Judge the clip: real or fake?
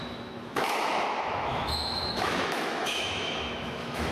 fake